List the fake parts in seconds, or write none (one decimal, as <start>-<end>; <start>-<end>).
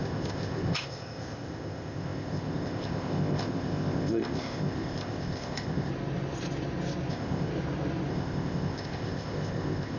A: 0.0-5.9; 7.1-7.5; 8.1-10.0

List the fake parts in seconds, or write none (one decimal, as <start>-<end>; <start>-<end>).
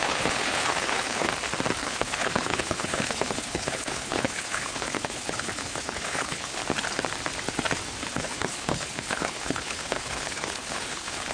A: 0.0-1.3; 1.8-6.6; 8.0-11.3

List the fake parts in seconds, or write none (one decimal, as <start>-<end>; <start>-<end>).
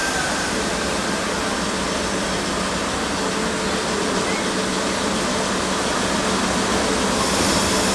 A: none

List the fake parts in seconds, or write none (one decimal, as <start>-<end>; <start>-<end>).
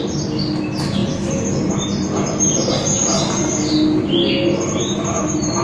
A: none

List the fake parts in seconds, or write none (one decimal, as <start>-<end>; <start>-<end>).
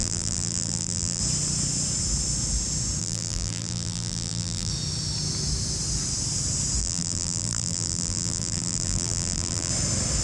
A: 0.0-1.2; 3.0-4.7; 6.8-9.7